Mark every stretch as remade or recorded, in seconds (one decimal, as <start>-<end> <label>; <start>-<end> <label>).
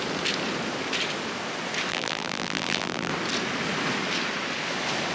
0.0-1.9 recorded; 1.9-3.1 remade; 3.1-5.1 recorded